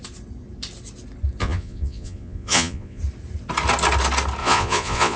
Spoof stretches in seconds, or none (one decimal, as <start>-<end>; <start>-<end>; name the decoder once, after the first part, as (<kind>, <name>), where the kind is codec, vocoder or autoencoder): 1.4-3.0 (vocoder, Vocos); 4.4-5.2